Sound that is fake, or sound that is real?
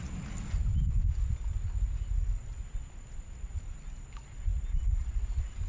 real